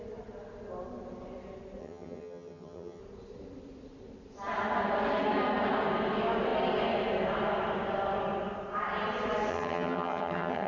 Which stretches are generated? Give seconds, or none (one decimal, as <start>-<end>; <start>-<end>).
1.8-3.0; 9.5-10.7